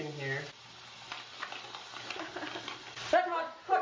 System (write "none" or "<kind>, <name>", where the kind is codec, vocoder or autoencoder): none